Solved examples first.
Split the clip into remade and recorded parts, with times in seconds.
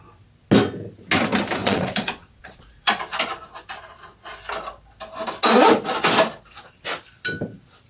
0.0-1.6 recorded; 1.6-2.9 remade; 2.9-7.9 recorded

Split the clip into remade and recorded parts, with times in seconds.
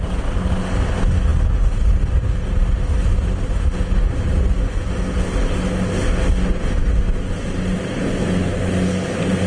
0.0-9.5 recorded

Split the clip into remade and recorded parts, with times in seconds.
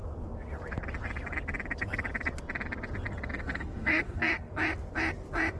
0.0-3.4 recorded; 3.4-4.5 remade; 4.5-5.6 recorded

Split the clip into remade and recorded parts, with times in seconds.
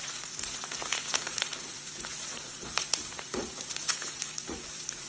0.0-5.1 remade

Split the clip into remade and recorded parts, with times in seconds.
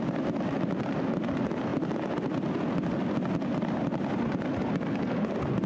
0.0-5.7 recorded